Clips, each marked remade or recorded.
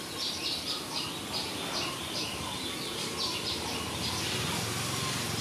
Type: recorded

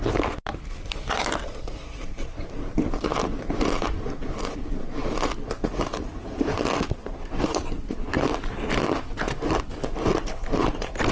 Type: recorded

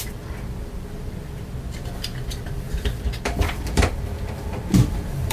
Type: remade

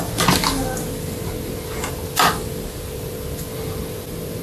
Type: recorded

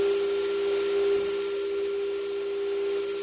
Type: recorded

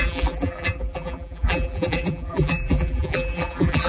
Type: remade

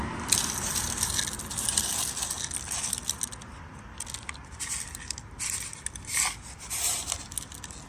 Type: recorded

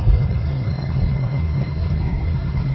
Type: remade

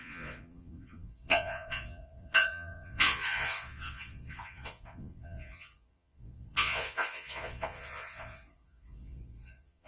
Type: remade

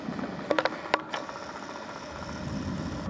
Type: recorded